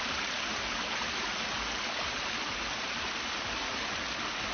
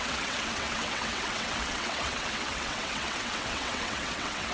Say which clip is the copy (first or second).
second